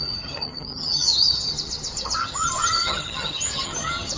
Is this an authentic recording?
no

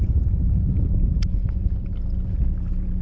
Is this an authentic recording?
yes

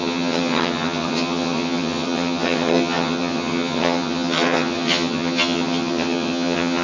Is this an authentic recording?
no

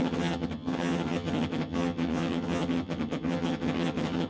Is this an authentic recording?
no